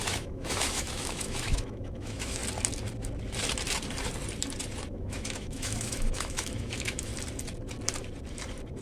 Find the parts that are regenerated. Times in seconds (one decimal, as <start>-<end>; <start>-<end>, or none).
0.0-2.4; 4.9-7.1